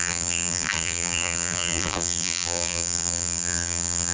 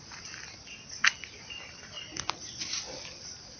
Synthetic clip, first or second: first